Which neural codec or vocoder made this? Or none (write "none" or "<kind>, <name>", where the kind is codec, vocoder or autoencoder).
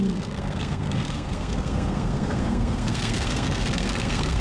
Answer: codec, SNAC